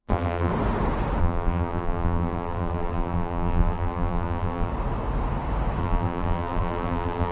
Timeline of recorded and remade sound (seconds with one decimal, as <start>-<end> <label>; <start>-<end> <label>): 0.0-0.5 remade; 0.5-1.2 recorded; 1.2-4.7 remade; 4.7-5.8 recorded; 5.8-7.3 remade